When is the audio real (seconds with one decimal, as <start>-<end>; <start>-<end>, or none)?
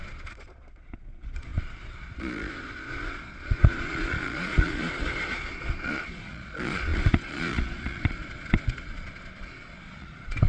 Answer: none